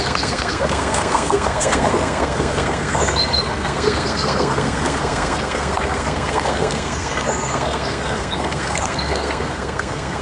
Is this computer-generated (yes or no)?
yes